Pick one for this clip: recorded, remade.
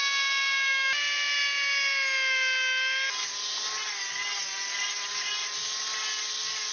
recorded